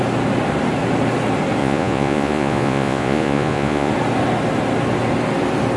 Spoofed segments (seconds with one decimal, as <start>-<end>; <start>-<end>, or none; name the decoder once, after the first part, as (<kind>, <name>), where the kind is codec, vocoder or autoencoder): 1.6-3.9 (vocoder, Vocos)